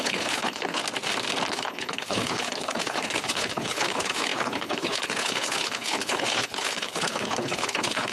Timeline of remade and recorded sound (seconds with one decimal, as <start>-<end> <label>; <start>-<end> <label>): 0.0-0.8 remade; 0.8-1.5 recorded; 1.5-8.1 remade